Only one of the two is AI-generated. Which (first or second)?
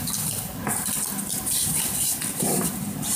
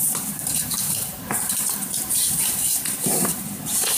second